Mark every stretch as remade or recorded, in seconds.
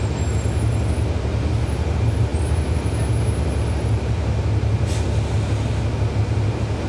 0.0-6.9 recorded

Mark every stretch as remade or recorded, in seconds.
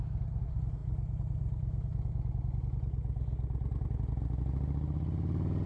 0.0-5.7 recorded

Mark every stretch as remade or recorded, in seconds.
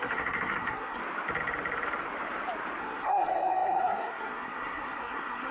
0.0-1.0 remade; 1.0-2.8 recorded; 2.8-5.5 remade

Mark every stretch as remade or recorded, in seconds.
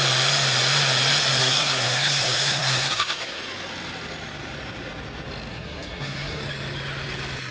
0.0-1.4 recorded; 1.4-3.4 remade; 3.4-5.5 recorded; 5.5-6.4 remade; 6.4-7.5 recorded